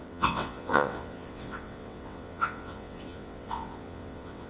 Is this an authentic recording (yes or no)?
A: no